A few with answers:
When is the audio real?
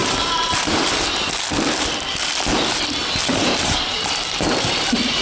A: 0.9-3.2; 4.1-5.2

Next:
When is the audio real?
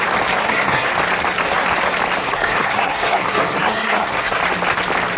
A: 0.0-0.4; 0.9-2.2; 4.4-5.2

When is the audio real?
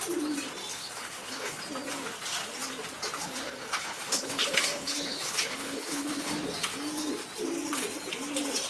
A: 0.0-0.7; 1.6-3.2; 6.3-8.7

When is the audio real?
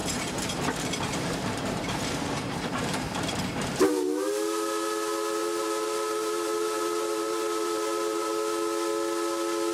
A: 3.4-5.4; 8.3-9.7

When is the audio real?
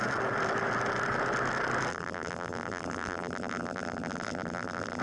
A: 0.0-1.9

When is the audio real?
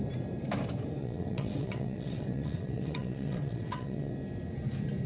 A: 0.0-1.0; 4.1-5.1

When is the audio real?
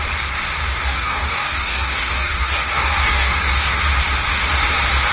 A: 0.0-0.7; 3.8-5.1